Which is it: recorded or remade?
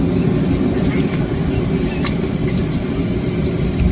recorded